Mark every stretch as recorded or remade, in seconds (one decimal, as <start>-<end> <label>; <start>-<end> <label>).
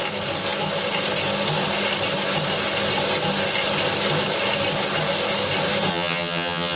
0.0-5.9 recorded; 5.9-6.8 remade